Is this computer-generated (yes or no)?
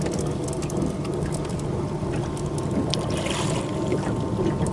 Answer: no